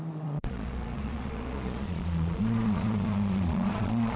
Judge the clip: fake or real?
fake